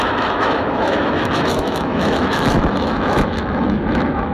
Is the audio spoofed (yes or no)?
yes